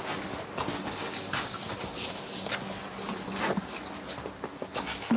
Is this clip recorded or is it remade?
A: recorded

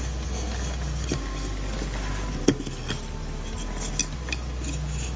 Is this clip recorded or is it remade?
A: recorded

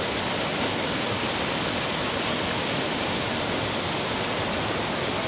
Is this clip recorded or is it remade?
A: recorded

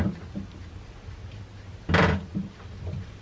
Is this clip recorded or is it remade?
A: recorded